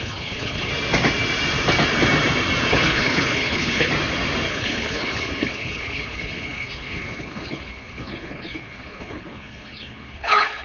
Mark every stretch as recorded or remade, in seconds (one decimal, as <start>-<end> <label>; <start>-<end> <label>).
0.0-0.7 remade; 0.7-2.7 recorded; 2.7-3.9 remade; 3.9-4.5 recorded; 4.5-10.6 remade